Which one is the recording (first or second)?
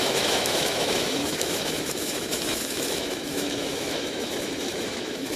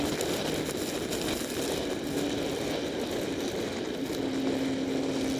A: second